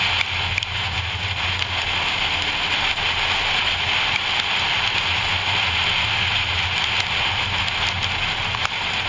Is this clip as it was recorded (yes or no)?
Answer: yes